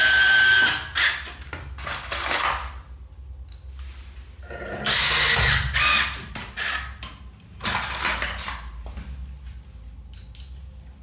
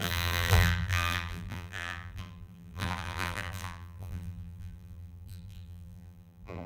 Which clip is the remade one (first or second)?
second